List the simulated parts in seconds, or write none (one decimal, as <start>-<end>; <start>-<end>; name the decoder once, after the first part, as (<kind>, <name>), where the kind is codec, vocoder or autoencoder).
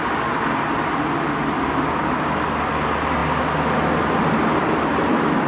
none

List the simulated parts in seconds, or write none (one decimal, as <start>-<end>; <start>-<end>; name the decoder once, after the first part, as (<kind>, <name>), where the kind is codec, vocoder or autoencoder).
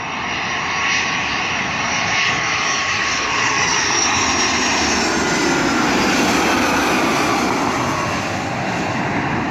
1.9-4.3 (codec, DAC)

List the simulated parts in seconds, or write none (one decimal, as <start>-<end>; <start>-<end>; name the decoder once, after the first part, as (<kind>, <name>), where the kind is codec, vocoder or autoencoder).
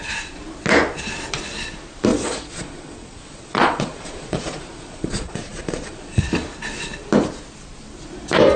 2.1-6.2 (vocoder, Vocos)